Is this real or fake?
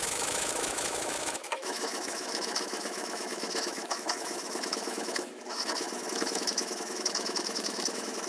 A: fake